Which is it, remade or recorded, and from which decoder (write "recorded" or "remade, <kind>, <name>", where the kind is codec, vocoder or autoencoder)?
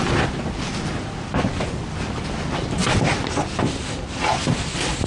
recorded